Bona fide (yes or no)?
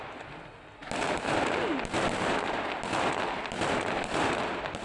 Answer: yes